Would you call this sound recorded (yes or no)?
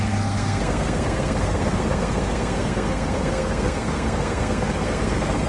no